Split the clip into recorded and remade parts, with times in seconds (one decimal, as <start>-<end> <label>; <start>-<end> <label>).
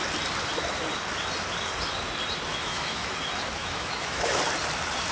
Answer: 0.0-2.5 recorded; 2.5-3.1 remade; 3.1-3.6 recorded; 3.6-4.4 remade; 4.4-5.1 recorded